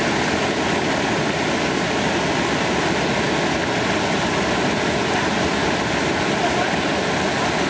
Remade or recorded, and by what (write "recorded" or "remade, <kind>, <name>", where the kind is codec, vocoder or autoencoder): recorded